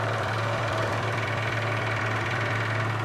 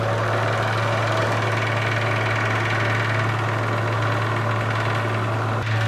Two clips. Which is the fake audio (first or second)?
first